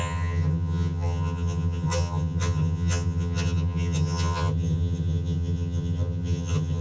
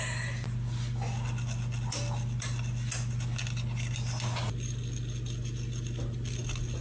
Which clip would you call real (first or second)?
second